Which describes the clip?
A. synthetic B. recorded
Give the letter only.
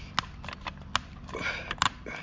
B